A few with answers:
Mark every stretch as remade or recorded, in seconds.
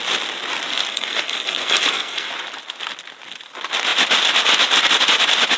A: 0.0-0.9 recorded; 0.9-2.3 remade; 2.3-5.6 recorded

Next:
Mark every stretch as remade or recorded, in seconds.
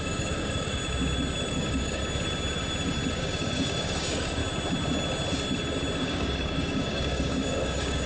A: 0.0-0.8 remade; 0.8-1.5 recorded; 1.5-2.0 remade; 2.0-3.1 recorded; 3.1-4.4 remade; 4.4-6.0 recorded; 6.0-8.1 remade